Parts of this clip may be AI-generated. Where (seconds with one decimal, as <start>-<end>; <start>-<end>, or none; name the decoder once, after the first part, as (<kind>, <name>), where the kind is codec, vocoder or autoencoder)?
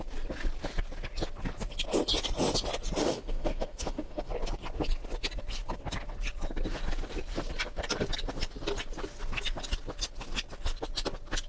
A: 3.0-4.3 (autoencoder, DAC-VAE)